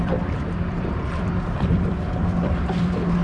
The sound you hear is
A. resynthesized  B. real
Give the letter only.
A